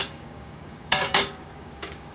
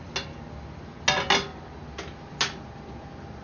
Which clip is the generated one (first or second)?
first